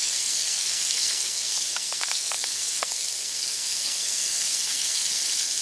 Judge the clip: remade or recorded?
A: remade